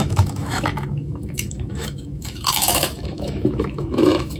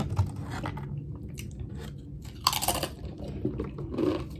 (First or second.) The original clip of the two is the second